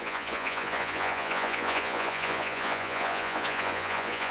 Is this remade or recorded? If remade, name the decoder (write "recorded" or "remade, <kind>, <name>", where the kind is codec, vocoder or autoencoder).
remade, vocoder, Vocos